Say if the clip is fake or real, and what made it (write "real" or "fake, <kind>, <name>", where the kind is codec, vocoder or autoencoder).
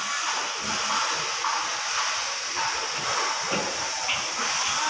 real